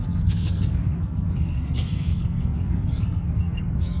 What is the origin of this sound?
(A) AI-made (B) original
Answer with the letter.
A